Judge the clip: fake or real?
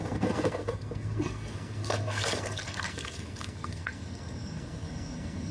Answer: fake